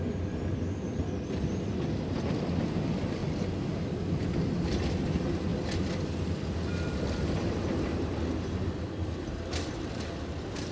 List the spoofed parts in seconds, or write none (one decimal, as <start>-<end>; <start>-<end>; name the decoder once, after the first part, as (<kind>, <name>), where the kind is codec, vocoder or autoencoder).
none